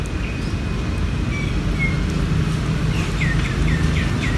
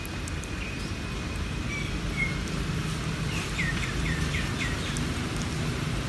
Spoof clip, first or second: second